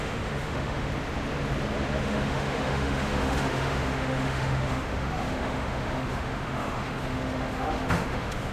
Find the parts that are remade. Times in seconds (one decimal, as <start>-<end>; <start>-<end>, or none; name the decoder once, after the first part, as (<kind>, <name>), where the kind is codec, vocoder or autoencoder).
0.0-0.9 (autoencoder, DAC-VAE); 2.0-8.5